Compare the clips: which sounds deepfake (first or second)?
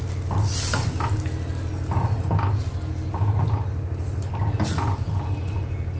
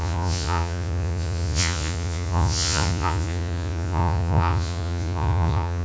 second